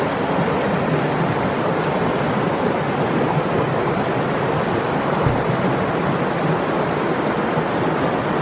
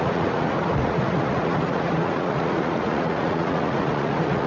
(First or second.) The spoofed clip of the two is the second